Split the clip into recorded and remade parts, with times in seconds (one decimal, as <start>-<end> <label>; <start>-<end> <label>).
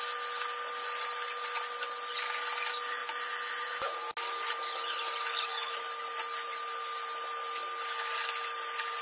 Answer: 0.0-9.0 recorded